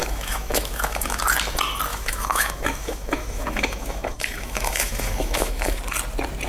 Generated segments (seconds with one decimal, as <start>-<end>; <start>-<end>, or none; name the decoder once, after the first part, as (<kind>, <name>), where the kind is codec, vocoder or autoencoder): 0.0-1.2 (autoencoder, DAC-VAE); 1.9-5.8